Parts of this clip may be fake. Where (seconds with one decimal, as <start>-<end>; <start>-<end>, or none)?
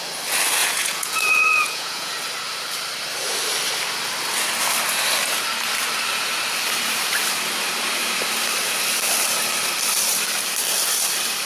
0.6-2.1